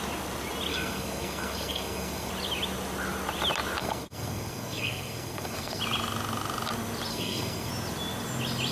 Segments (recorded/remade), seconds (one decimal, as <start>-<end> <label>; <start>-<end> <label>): 0.0-0.7 recorded; 0.7-2.3 remade; 2.3-3.8 recorded; 3.8-5.8 remade; 5.8-7.1 recorded; 7.1-7.7 remade; 7.7-8.7 recorded